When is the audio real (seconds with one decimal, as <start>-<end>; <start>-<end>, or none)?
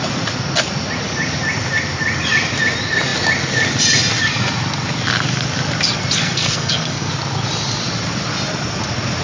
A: 0.0-6.2; 7.1-9.2